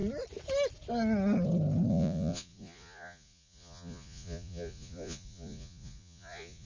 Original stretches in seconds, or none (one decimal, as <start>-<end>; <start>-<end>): 0.0-1.9

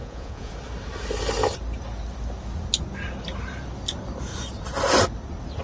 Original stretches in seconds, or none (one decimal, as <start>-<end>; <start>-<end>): 0.5-5.6

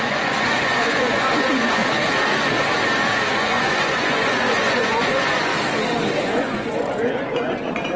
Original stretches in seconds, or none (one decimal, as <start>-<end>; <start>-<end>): 1.8-3.3; 5.5-6.2

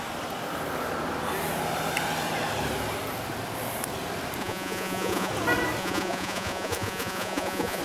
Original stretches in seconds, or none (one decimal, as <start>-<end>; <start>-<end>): 0.0-4.4; 5.3-5.8

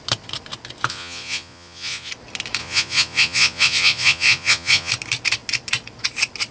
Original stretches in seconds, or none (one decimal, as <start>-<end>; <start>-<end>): 0.0-0.9; 2.1-2.6; 4.9-6.5

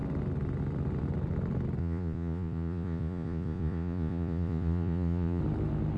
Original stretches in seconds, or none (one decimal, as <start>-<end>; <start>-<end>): 0.0-1.8; 5.4-6.0